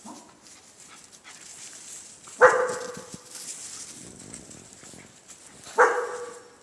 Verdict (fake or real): real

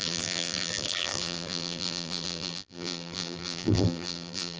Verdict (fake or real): fake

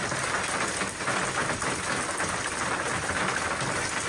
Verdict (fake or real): real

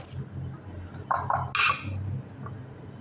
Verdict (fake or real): real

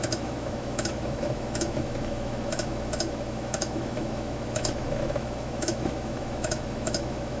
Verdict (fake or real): fake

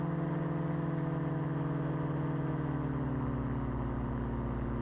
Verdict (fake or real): real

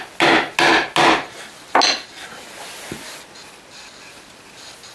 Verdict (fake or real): real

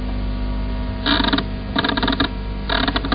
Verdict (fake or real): real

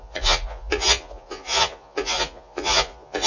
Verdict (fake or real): fake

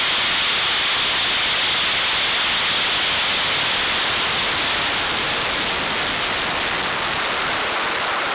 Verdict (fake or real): real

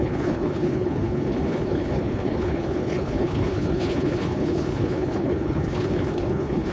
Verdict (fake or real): fake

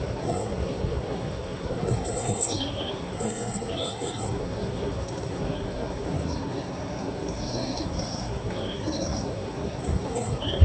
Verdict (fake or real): fake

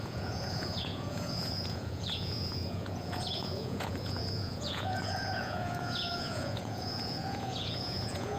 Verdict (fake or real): fake